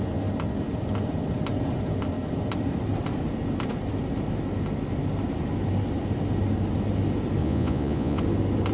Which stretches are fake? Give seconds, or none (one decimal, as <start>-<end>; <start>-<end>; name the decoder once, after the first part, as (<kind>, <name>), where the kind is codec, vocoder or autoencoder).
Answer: 7.4-8.2 (vocoder, Vocos)